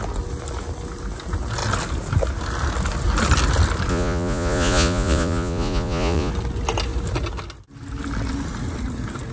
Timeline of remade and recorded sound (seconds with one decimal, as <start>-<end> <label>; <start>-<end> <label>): 0.0-3.9 recorded; 3.9-6.3 remade; 6.3-9.3 recorded